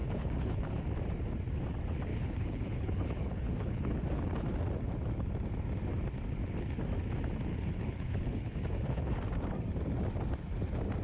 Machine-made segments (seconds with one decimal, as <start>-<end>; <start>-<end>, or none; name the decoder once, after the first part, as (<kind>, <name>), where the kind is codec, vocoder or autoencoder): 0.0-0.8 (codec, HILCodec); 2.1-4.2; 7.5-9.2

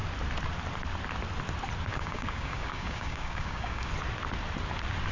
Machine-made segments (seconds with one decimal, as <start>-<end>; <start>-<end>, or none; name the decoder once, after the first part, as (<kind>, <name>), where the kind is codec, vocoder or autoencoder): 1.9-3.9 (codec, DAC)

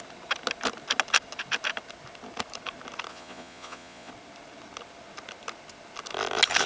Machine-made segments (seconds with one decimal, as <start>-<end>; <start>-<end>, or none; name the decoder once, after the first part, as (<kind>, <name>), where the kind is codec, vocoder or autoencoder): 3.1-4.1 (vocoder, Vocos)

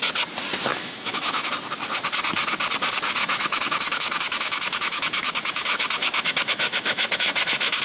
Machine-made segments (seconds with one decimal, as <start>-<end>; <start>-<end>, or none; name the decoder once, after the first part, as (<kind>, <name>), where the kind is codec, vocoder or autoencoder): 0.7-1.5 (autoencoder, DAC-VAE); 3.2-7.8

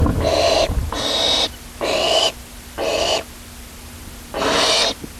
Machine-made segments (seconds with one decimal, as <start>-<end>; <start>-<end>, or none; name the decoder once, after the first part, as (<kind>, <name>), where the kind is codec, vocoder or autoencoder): none

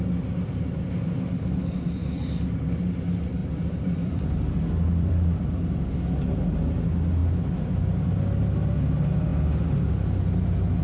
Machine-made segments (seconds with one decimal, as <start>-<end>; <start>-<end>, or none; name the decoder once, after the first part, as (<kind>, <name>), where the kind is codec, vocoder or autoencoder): 2.0-2.8 (vocoder, BigVGAN v2); 3.4-5.9; 7.2-8.1; 9.3-9.9

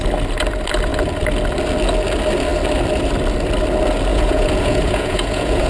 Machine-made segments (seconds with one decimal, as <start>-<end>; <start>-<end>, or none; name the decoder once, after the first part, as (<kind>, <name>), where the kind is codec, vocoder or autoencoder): 4.1-5.7 (vocoder, Vocos)

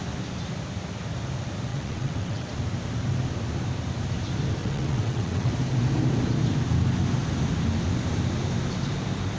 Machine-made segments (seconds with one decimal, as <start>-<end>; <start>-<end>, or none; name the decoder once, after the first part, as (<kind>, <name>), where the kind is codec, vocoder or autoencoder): 1.7-2.5 (vocoder, WaveNeXt); 4.6-5.5